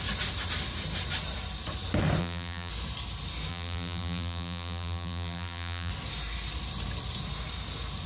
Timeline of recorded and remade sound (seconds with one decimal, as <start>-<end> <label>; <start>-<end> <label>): 0.0-2.2 recorded; 2.2-2.7 remade; 2.7-3.5 recorded; 3.5-5.9 remade; 5.9-8.1 recorded